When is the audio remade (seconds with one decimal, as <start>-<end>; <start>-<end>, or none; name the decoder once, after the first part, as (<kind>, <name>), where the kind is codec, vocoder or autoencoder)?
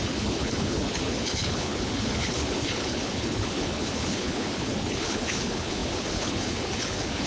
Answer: 0.0-7.3 (codec, HILCodec)